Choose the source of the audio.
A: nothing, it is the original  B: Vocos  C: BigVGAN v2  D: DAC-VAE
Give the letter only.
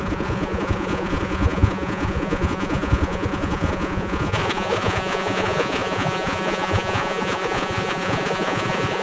B